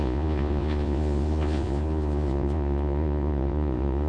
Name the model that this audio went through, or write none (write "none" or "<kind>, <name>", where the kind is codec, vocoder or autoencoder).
vocoder, Vocos